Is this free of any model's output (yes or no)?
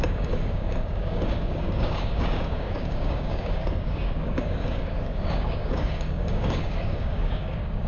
no